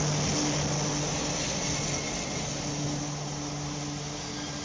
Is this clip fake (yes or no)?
no